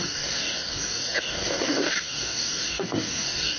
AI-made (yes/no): yes